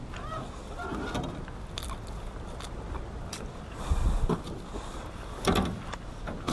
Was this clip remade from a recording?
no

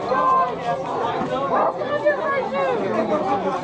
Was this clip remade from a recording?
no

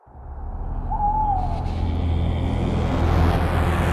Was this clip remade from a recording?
no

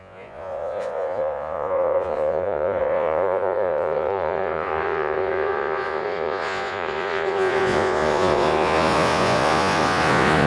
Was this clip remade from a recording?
yes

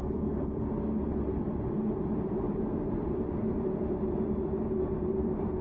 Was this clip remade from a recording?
yes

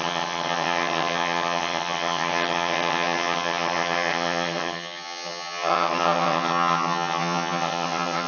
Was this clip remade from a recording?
yes